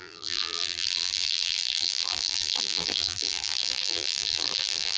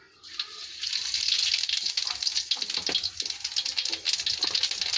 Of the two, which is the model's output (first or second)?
first